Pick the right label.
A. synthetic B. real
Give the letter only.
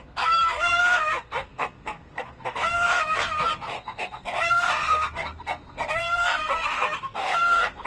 A